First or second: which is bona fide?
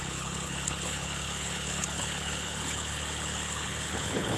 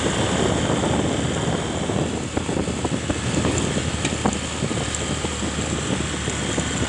second